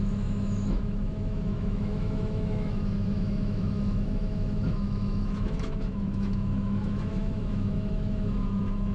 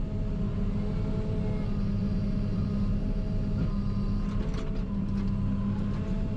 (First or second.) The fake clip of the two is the first